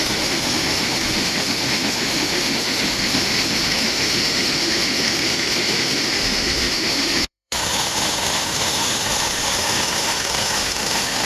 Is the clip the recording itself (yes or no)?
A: no